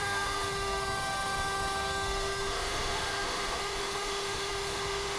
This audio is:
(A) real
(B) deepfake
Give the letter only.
B